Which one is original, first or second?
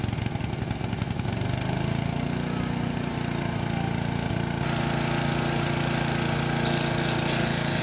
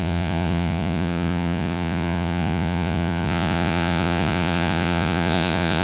first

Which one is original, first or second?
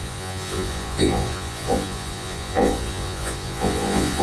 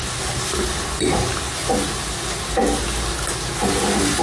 second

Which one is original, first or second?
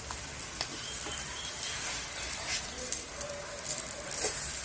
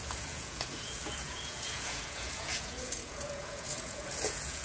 first